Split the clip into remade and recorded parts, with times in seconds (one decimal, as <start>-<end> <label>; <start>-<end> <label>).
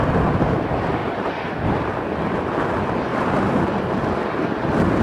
0.0-3.1 recorded; 3.1-3.8 remade; 3.8-5.0 recorded